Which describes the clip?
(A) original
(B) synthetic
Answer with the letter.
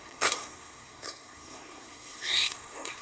B